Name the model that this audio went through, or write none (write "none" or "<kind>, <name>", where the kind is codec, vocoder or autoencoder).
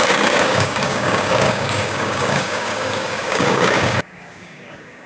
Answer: codec, DAC